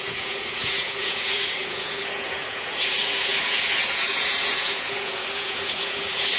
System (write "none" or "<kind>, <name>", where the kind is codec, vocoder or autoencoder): vocoder, Vocos